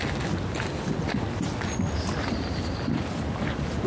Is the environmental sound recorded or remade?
recorded